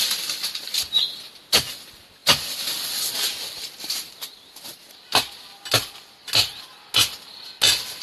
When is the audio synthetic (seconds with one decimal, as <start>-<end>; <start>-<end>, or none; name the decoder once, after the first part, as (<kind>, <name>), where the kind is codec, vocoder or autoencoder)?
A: none